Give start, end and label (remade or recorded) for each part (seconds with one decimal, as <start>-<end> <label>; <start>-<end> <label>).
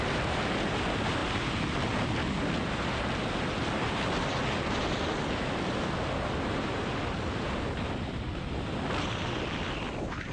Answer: 0.0-10.3 recorded